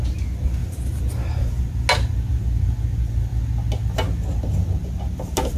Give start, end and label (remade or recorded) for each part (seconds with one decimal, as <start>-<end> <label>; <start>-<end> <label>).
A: 0.0-5.6 recorded